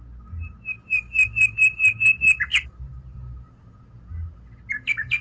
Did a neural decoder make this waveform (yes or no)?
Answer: no